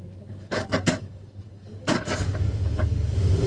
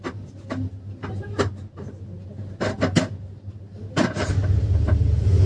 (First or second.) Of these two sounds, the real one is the second